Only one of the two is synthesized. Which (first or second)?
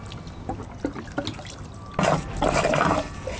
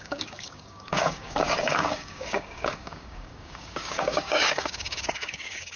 second